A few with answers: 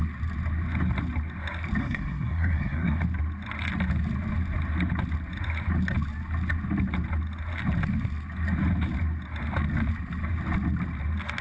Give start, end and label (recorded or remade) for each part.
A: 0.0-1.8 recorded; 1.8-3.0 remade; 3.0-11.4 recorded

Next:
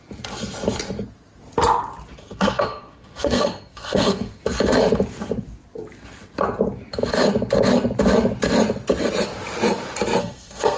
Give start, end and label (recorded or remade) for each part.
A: 0.0-2.2 recorded; 2.2-4.4 remade; 4.4-10.2 recorded; 10.2-10.8 remade

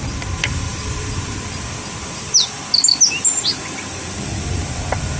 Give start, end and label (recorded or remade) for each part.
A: 0.0-5.2 recorded

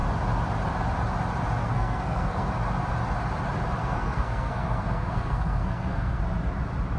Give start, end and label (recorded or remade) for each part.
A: 0.0-1.6 recorded; 1.6-2.5 remade; 2.5-3.8 recorded; 3.8-6.2 remade; 6.2-7.0 recorded

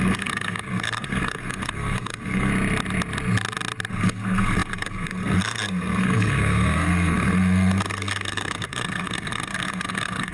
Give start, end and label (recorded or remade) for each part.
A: 0.0-2.5 remade; 2.5-3.9 recorded; 3.9-10.3 remade